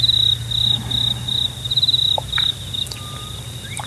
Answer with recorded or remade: recorded